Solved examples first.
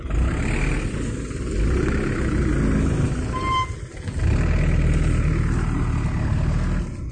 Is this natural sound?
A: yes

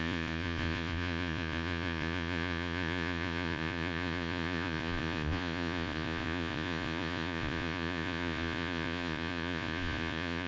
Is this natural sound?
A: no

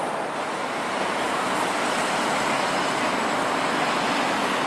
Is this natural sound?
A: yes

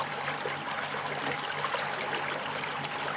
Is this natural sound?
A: yes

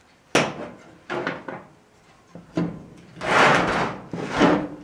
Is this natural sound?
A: yes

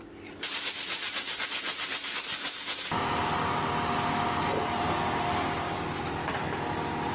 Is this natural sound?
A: yes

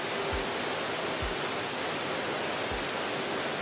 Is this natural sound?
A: yes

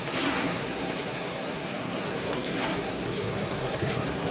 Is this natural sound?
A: no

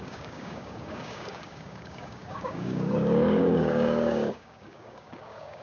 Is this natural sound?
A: no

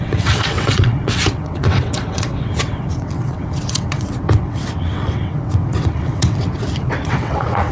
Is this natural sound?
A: no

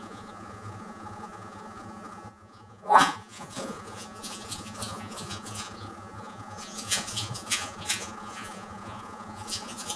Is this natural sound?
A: no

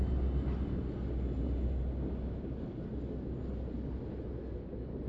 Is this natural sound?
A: yes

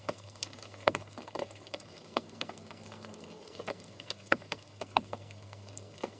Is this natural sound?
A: no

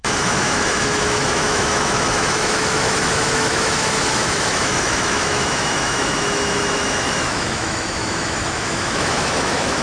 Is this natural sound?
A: no